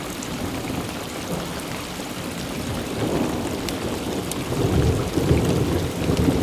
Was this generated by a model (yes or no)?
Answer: no